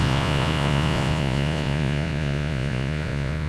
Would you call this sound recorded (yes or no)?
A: no